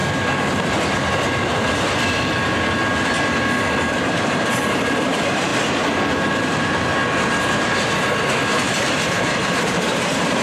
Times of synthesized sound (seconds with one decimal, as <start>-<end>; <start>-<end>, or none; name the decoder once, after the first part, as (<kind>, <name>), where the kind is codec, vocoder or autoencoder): 3.9-5.5 (vocoder, BigVGAN v2); 6.1-6.9; 8.6-10.4